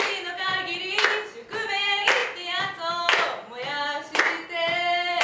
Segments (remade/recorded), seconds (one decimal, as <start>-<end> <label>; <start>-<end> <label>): 0.0-5.2 recorded